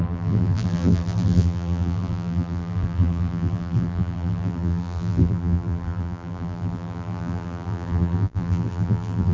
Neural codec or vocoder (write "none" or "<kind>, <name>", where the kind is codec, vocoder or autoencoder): vocoder, BigVGAN v2